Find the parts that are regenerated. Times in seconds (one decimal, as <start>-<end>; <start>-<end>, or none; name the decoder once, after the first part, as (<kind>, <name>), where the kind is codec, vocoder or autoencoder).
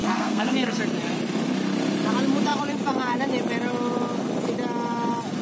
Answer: 0.0-0.8 (codec, SNAC)